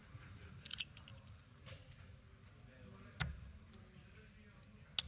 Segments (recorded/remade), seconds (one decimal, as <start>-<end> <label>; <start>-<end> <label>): 0.0-1.6 remade; 1.6-3.2 recorded; 3.2-3.7 remade; 3.7-5.1 recorded